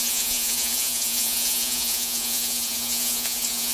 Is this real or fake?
fake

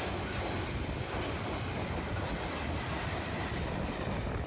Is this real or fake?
real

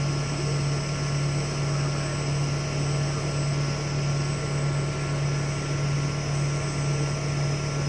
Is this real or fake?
real